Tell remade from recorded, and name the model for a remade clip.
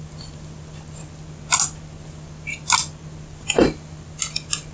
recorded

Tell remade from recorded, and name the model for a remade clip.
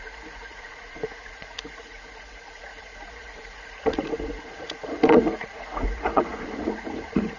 remade, vocoder, Vocos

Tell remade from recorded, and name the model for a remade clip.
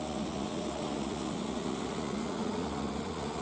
remade, vocoder, Vocos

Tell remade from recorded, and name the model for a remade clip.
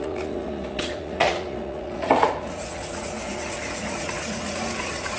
remade, vocoder, Vocos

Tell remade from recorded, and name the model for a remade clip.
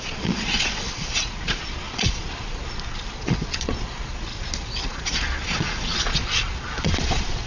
remade, vocoder, Vocos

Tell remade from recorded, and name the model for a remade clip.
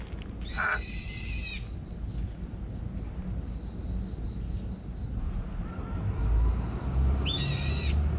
recorded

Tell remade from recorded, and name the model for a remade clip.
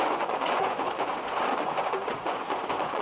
remade, vocoder, Vocos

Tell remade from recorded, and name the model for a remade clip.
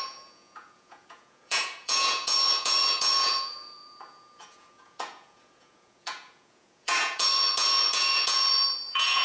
remade, vocoder, Vocos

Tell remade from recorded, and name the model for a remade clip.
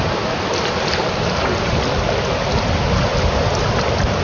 recorded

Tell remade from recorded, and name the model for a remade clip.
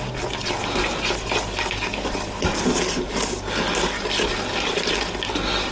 recorded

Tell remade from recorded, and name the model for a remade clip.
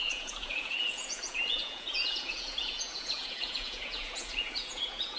remade, vocoder, Vocos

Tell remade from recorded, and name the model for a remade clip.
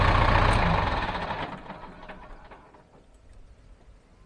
recorded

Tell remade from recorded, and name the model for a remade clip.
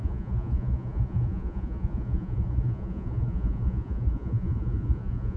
remade, vocoder, Vocos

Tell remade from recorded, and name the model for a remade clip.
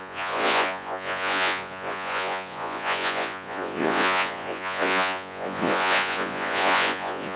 remade, vocoder, Vocos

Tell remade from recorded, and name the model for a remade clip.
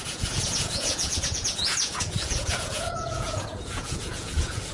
remade, vocoder, Vocos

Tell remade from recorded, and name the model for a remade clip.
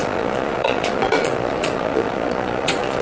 remade, vocoder, Vocos